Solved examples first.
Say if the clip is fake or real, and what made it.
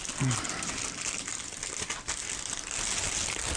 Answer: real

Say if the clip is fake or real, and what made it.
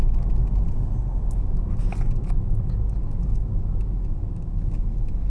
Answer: real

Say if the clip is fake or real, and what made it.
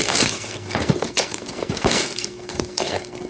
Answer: fake, codec, SNAC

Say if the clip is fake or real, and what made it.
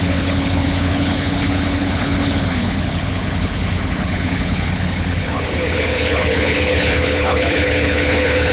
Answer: fake, codec, HILCodec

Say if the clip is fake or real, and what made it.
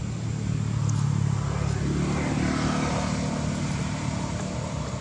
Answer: real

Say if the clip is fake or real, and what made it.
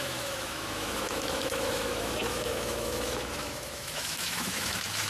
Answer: fake, autoencoder, DAC-VAE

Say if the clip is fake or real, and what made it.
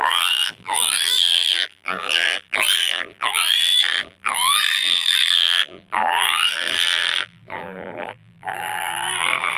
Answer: fake, vocoder, BigVGAN v2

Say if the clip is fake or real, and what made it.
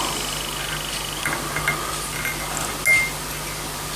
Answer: real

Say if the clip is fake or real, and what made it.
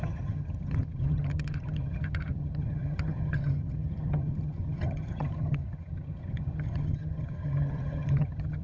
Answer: fake, vocoder, HiFi-GAN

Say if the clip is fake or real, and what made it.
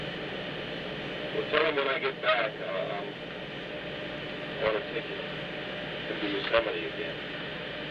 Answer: real